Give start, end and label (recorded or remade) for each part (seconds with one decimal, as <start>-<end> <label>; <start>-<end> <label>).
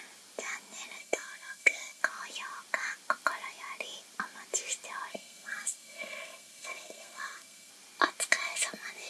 0.0-1.0 recorded; 1.0-2.0 remade; 2.0-5.1 recorded; 5.1-7.7 remade; 7.7-9.1 recorded